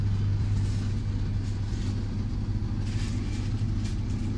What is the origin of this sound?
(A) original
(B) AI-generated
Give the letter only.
A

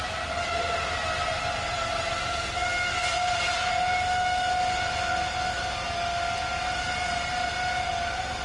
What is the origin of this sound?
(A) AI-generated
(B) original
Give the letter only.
B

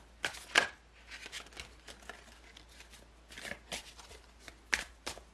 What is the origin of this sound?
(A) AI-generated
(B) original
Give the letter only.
B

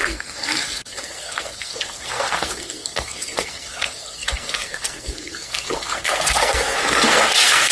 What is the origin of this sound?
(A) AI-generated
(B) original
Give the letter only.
A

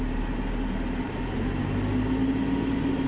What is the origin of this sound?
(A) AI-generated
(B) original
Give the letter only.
B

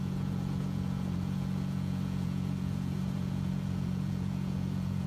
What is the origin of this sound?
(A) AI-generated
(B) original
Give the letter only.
A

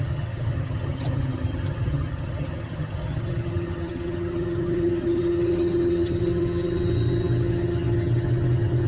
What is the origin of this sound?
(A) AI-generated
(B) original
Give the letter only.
A